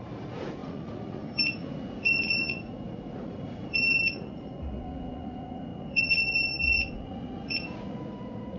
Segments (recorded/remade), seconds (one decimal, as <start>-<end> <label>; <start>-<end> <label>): 0.0-8.6 remade